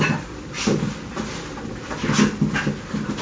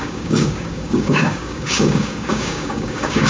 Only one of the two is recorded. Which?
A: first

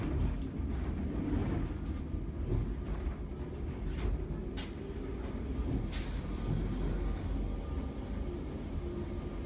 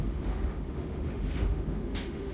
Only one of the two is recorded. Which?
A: first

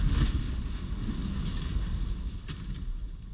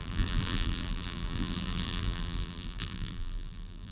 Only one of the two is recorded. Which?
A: first